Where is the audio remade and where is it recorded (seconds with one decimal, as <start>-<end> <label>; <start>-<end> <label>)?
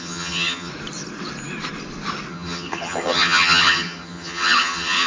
0.0-0.7 remade; 0.7-2.3 recorded; 2.3-5.1 remade